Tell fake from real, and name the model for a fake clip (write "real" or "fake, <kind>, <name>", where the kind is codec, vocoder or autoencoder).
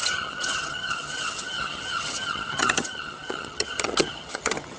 fake, vocoder, HiFi-GAN